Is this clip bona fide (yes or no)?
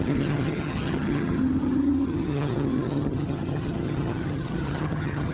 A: no